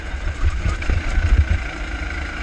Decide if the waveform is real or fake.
real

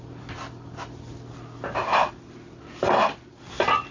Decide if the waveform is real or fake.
real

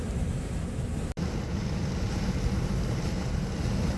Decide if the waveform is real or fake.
real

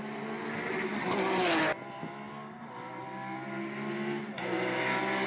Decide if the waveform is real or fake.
real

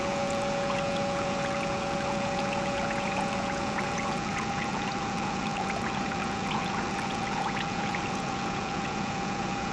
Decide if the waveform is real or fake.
fake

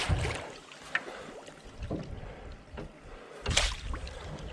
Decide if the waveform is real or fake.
real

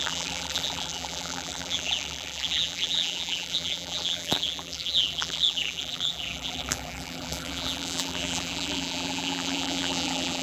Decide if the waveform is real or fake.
fake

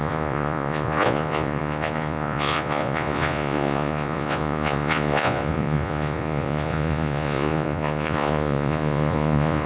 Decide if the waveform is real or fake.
fake